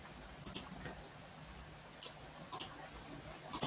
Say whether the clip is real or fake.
real